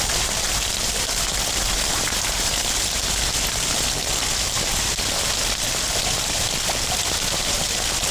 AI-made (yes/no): no